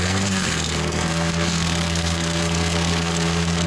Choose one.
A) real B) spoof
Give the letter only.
B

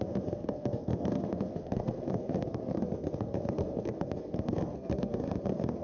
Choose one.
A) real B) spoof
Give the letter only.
B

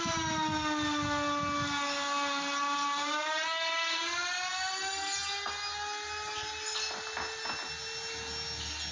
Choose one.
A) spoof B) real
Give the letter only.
B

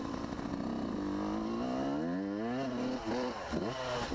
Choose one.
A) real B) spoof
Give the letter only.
A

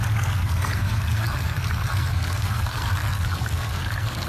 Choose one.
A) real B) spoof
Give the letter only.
B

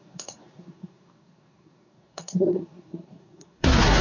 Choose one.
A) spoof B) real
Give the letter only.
A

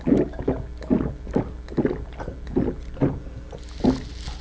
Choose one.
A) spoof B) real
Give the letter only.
B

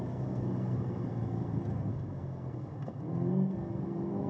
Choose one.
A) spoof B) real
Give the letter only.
A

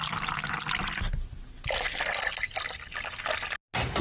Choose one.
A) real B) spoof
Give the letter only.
A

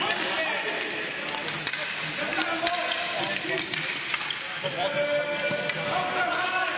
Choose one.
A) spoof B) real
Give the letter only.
B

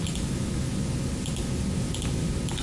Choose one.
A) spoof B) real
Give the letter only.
B